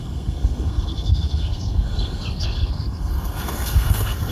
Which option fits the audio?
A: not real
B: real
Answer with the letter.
A